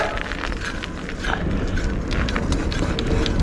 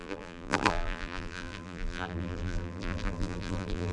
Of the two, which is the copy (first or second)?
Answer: second